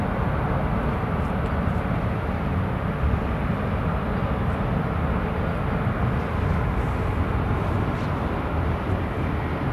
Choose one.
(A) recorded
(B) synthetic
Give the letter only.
A